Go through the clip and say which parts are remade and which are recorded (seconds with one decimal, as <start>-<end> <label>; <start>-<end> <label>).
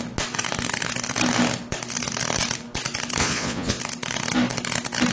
0.0-3.2 recorded; 3.2-3.8 remade; 3.8-5.1 recorded